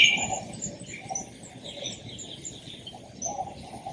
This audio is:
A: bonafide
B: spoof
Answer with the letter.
A